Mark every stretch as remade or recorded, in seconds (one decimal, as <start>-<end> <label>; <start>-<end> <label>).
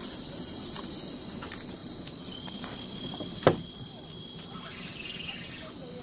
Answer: 0.0-1.8 recorded; 1.8-4.2 remade; 4.2-6.0 recorded